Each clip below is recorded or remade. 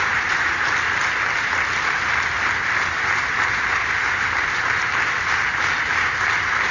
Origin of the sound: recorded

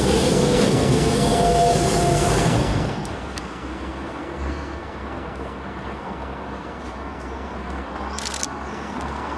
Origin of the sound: remade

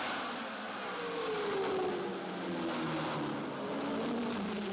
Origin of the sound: recorded